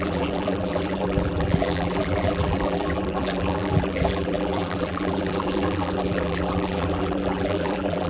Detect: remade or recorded remade